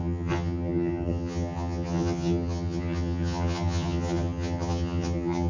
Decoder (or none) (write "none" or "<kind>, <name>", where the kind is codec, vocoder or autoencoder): vocoder, HiFi-GAN